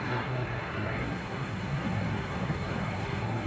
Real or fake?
fake